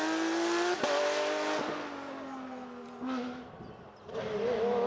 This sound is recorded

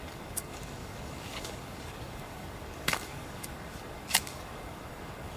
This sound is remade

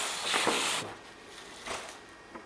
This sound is recorded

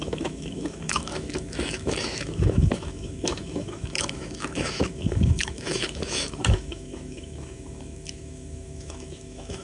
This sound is remade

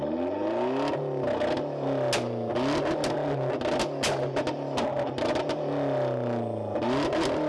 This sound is recorded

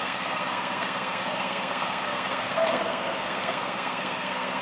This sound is remade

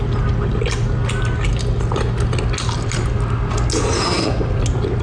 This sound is recorded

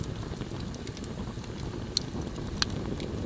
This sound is recorded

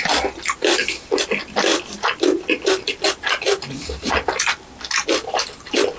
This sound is remade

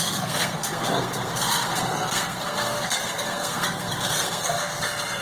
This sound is remade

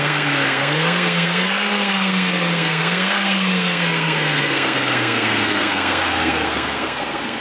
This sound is remade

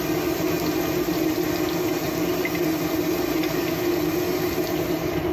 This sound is recorded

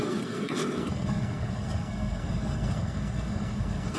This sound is remade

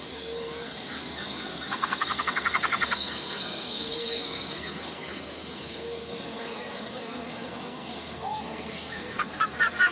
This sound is remade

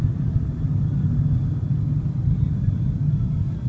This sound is recorded